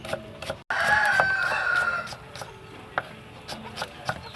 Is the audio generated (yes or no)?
no